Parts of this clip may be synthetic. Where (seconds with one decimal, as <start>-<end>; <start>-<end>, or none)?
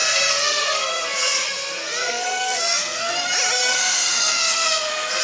0.0-3.1; 3.7-5.2